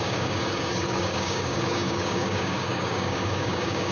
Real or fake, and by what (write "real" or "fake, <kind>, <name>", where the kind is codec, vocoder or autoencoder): fake, codec, DAC